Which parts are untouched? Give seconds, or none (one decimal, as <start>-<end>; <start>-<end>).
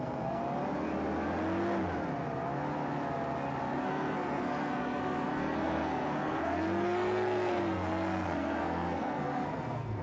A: 0.4-3.8